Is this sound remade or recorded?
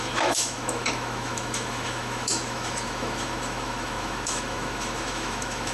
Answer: remade